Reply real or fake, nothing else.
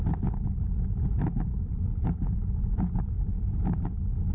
real